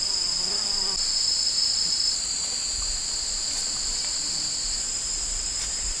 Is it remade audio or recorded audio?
recorded